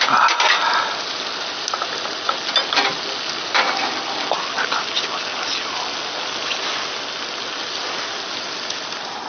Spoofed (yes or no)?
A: no